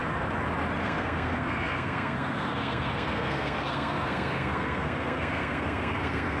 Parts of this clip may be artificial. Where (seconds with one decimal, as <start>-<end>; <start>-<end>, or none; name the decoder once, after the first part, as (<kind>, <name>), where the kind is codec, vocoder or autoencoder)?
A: 0.8-6.4 (codec, SNAC)